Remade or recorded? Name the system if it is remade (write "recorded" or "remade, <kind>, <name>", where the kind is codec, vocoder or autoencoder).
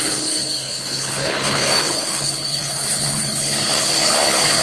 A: remade, codec, HILCodec